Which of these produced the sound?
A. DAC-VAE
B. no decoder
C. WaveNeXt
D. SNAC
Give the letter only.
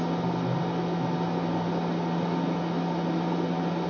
B